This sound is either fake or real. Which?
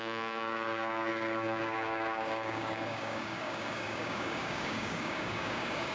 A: fake